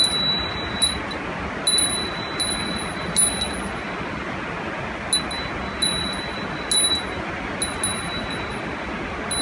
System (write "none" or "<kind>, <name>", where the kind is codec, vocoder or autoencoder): none